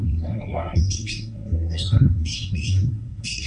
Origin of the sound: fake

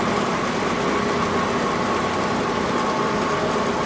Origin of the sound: real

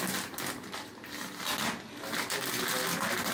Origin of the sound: real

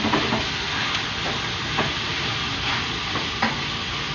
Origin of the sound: real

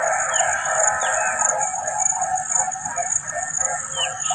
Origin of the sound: real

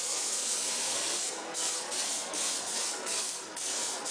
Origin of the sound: fake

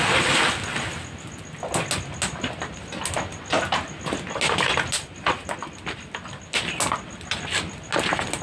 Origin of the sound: real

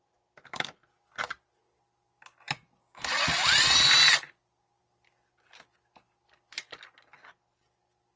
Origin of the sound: real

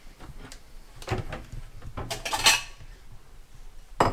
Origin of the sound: real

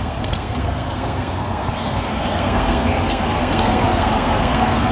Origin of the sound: fake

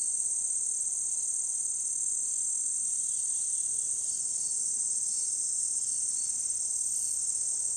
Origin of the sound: real